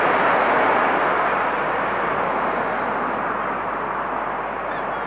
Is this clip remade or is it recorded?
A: recorded